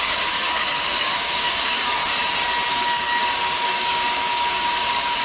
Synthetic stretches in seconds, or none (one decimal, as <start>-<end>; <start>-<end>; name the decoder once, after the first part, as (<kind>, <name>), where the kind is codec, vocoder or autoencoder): 0.0-2.0 (codec, DAC); 2.7-5.2